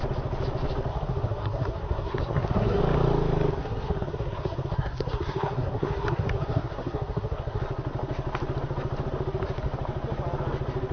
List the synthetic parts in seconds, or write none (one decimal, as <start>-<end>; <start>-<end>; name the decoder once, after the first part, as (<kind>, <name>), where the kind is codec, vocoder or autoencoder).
0.9-2.8 (codec, SNAC); 3.6-7.6